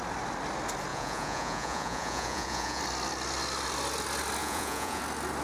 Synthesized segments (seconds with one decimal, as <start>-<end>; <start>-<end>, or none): 0.9-2.8; 4.4-5.0